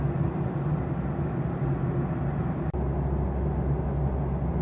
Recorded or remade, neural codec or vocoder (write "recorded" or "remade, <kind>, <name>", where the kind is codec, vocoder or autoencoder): recorded